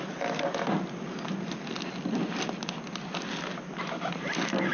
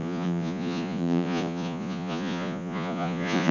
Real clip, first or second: first